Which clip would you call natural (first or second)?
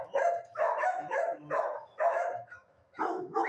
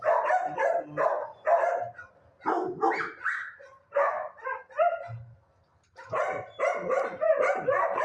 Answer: second